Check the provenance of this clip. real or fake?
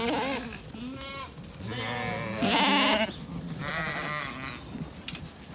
real